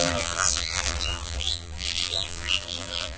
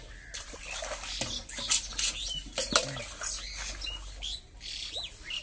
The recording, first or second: second